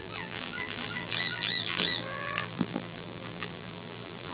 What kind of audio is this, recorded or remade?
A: remade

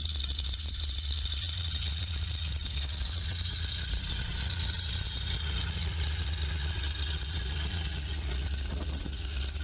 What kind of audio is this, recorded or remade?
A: remade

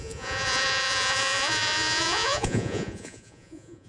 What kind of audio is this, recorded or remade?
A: remade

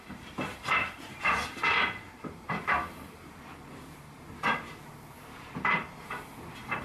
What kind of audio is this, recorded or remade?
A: remade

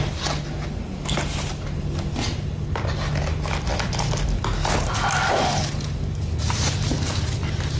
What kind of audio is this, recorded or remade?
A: recorded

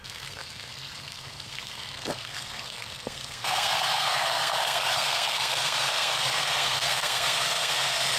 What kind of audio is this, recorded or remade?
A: remade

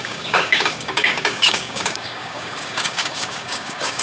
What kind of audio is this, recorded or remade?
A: remade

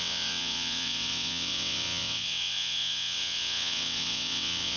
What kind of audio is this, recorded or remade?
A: remade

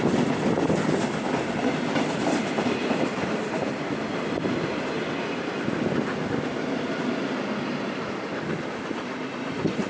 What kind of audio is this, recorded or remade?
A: recorded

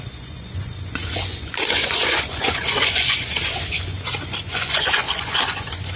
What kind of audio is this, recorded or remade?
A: remade